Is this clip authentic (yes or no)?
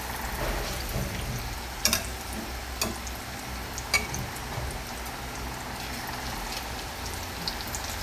yes